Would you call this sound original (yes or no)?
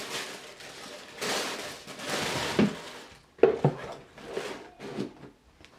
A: yes